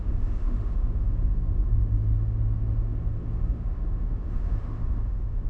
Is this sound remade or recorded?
remade